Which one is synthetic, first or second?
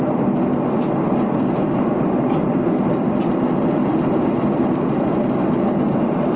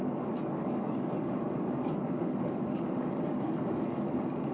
second